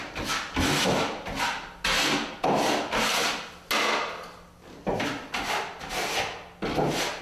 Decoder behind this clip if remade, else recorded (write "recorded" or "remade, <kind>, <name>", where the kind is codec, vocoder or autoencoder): recorded